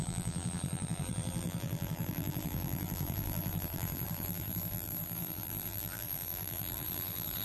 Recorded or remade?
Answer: remade